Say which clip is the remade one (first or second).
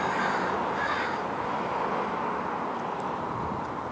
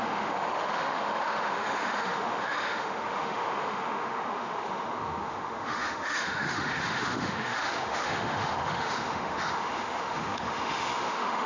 second